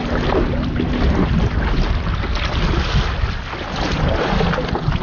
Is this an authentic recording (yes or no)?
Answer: yes